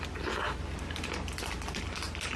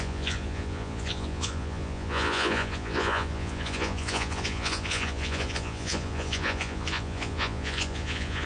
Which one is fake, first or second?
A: second